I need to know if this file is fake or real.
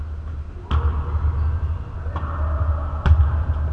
real